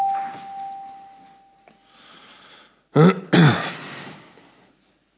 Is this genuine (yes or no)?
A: yes